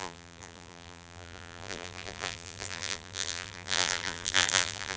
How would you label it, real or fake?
fake